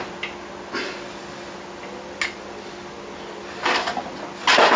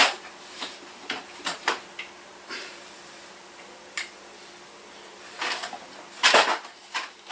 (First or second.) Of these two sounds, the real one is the first